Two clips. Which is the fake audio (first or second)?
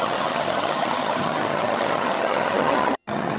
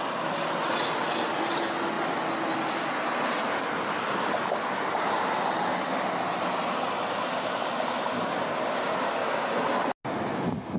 first